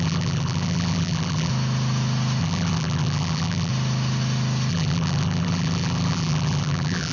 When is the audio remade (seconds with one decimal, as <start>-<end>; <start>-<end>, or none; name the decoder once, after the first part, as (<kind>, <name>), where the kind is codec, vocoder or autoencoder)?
0.0-1.5 (vocoder, BigVGAN v2); 2.4-3.7; 4.7-7.1